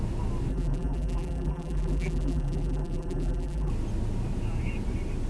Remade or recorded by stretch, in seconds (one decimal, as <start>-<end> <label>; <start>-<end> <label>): 0.0-0.5 recorded; 0.5-3.7 remade; 3.7-5.3 recorded